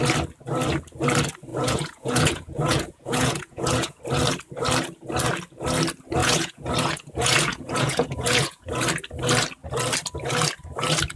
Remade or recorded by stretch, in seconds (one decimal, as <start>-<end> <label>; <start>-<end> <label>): 0.0-1.5 recorded; 1.5-4.0 remade; 4.0-6.2 recorded; 6.2-8.7 remade; 8.7-11.2 recorded